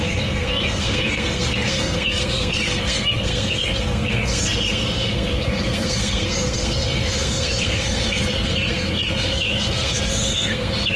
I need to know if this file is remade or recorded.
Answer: remade